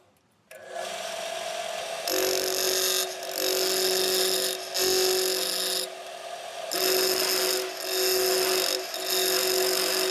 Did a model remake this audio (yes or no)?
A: no